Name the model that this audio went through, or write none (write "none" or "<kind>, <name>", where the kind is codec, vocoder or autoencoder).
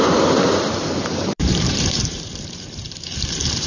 vocoder, BigVGAN v2